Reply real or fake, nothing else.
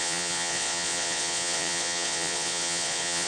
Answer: fake